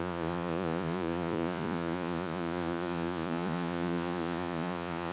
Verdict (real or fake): fake